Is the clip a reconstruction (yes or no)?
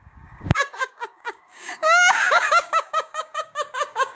yes